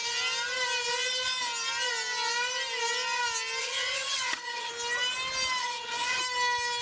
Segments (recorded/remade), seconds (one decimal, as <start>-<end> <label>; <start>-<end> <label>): 0.0-3.6 recorded; 3.6-4.7 remade; 4.7-5.6 recorded; 5.6-6.2 remade; 6.2-6.8 recorded